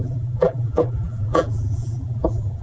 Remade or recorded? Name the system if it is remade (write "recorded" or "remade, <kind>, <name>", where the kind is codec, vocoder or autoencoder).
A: remade, vocoder, BigVGAN v2